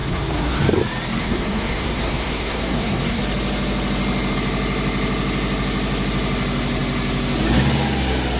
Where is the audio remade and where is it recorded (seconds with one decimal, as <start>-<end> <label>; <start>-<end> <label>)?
0.0-0.6 remade; 0.6-1.2 recorded; 1.2-3.2 remade; 3.2-8.4 recorded